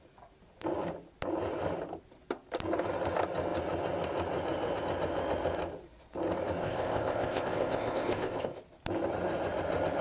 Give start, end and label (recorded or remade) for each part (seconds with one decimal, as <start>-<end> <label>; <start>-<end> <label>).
0.0-6.6 recorded; 6.6-8.6 remade; 8.6-10.0 recorded